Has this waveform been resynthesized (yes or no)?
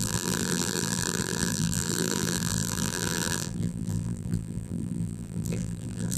yes